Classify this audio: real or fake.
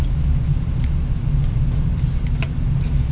real